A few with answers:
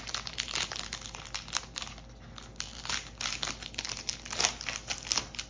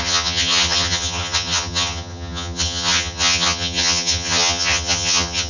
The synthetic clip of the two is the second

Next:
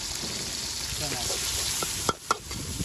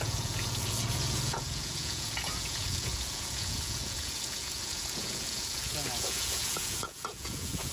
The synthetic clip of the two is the second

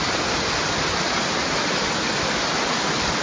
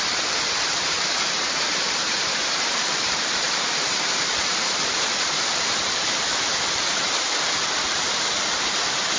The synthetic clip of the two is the second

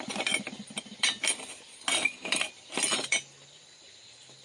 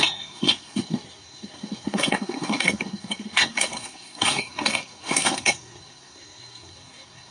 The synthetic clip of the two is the second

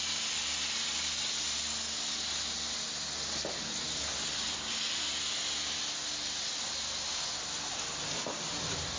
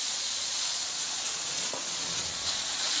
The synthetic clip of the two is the second